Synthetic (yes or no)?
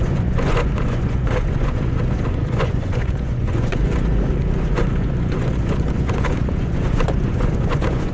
yes